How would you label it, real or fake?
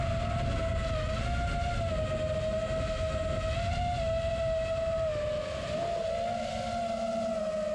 real